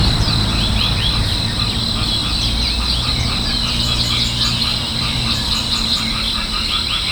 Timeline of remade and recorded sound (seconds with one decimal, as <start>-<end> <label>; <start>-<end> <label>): 0.0-1.8 remade; 1.8-4.7 recorded; 4.7-6.0 remade; 6.0-7.1 recorded

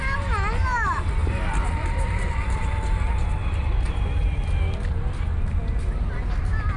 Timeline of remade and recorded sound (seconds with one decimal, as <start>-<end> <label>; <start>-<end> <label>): 0.0-1.2 recorded; 1.2-2.3 remade; 2.3-3.4 recorded; 3.4-4.0 remade; 4.0-6.8 recorded